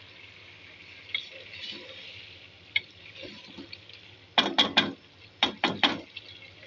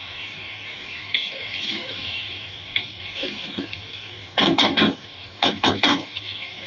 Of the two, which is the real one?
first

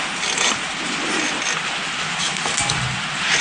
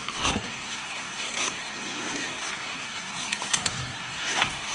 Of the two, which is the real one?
first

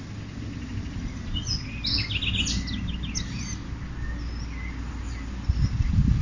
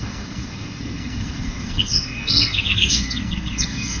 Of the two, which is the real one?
first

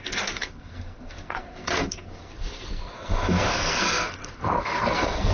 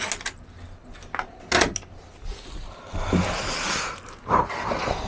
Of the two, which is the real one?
second